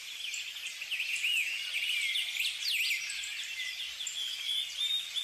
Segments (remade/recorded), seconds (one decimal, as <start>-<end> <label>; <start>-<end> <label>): 0.0-5.2 recorded